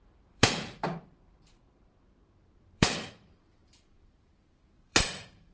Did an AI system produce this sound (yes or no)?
yes